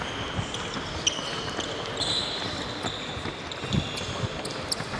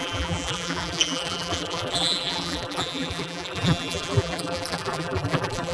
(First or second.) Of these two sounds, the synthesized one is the second